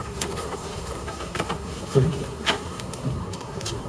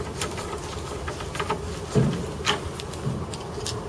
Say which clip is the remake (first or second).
first